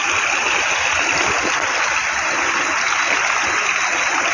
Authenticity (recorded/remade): recorded